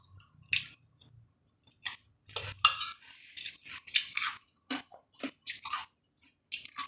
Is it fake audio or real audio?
real